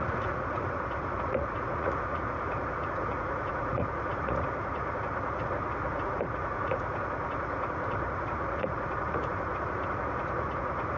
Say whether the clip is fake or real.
fake